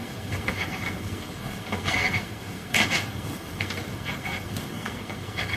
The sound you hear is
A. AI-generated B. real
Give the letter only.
A